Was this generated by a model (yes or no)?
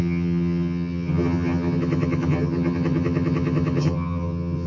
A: yes